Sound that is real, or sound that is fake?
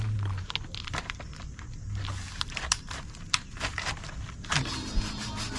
real